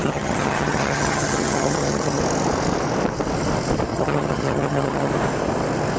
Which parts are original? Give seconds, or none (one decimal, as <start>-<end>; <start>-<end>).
2.2-3.9; 5.1-6.0